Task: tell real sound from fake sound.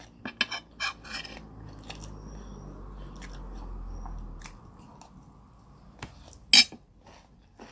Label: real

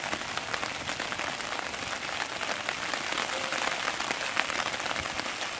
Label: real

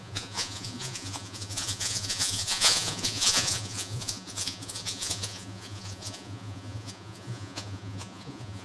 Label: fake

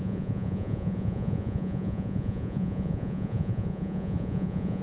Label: fake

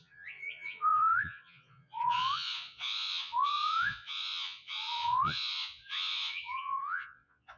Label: fake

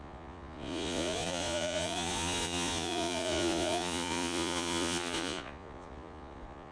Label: fake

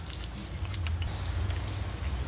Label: real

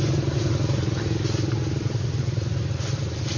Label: real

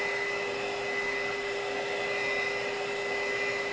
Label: real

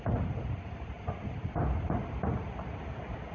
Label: real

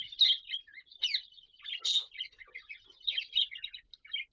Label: real